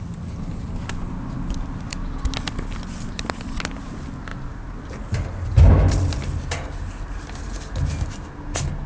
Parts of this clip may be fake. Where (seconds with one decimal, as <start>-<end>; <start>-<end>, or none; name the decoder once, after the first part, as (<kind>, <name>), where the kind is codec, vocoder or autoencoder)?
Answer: none